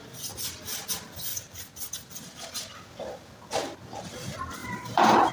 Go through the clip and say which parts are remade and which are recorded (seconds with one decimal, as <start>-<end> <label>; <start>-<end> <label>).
0.0-1.3 recorded; 1.3-1.9 remade; 1.9-4.6 recorded; 4.6-5.3 remade